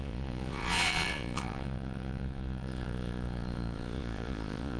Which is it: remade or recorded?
remade